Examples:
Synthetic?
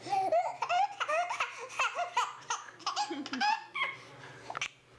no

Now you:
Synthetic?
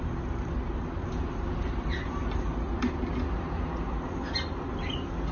no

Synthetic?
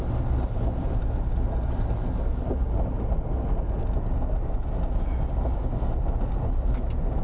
no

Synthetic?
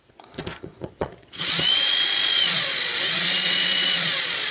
yes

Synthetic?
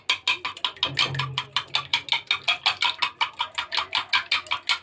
no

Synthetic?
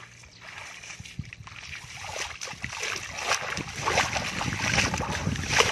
no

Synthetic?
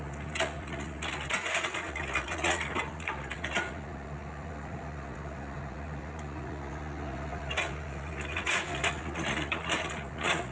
yes